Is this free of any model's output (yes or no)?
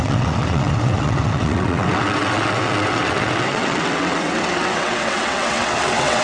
no